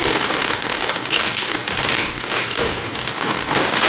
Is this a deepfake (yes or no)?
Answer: yes